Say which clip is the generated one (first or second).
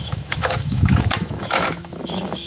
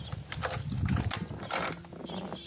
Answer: first